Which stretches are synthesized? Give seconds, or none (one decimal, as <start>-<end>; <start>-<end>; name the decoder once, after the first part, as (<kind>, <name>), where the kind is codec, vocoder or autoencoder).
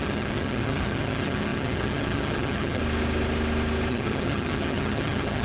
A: 0.0-2.8 (vocoder, HiFi-GAN); 3.9-5.4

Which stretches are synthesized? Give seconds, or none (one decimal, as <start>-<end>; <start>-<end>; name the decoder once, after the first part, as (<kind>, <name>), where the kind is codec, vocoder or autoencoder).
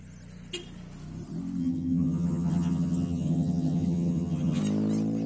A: 1.6-4.6 (vocoder, HiFi-GAN)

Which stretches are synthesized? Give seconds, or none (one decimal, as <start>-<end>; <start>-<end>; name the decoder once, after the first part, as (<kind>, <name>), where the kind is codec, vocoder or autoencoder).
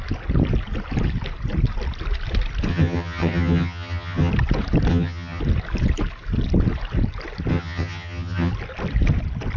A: 2.7-4.3 (vocoder, HiFi-GAN); 4.9-5.4; 7.5-8.5